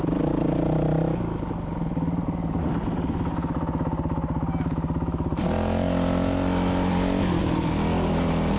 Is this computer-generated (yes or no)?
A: no